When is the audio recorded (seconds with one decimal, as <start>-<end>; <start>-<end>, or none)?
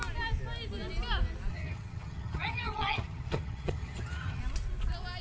0.0-1.5; 4.4-5.2